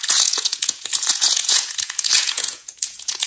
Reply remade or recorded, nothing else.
remade